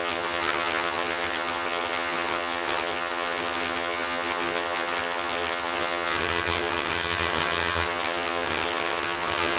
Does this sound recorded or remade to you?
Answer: remade